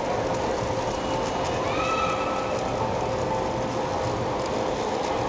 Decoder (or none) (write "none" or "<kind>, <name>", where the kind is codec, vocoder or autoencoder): none